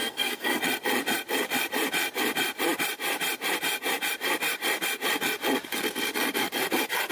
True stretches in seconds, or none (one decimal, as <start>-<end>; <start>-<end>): 0.6-7.1